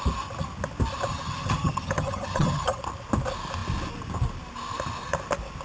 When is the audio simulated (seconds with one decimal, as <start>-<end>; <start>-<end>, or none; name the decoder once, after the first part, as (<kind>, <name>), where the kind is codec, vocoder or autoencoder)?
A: 1.1-2.8 (vocoder, HiFi-GAN)